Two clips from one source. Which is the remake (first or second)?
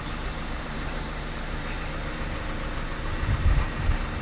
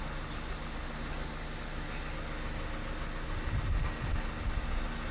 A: first